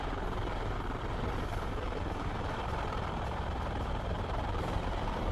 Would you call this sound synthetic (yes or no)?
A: yes